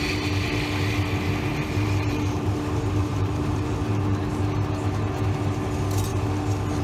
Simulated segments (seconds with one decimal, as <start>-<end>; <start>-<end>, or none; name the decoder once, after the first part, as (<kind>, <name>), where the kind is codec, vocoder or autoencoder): 1.5-3.9 (vocoder, BigVGAN v2)